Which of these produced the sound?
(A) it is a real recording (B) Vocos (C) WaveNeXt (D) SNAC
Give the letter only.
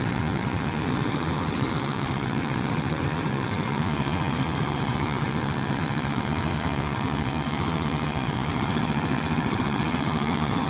C